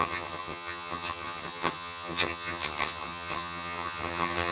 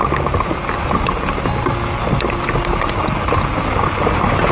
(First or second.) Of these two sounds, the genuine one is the second